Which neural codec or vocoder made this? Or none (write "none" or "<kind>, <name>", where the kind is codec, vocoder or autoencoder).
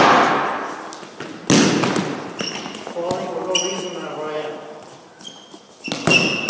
none